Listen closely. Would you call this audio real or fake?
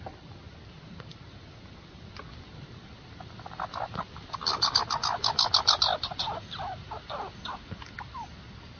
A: real